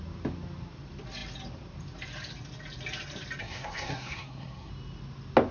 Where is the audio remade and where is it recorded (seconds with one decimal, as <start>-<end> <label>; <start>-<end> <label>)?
0.0-3.4 recorded; 3.4-4.7 remade; 4.7-5.5 recorded